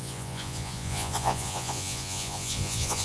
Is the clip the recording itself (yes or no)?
no